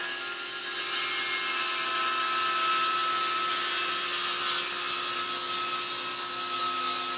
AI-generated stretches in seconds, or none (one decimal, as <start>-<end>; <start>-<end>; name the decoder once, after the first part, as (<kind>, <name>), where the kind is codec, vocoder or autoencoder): none